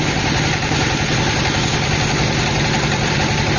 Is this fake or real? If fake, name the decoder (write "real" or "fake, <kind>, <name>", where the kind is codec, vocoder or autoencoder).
real